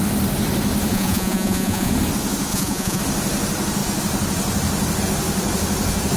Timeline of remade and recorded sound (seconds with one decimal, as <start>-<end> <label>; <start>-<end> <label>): 0.0-0.9 recorded; 0.9-1.9 remade; 1.9-2.5 recorded; 2.5-3.0 remade; 3.0-6.2 recorded